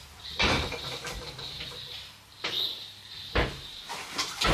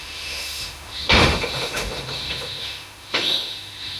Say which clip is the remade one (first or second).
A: second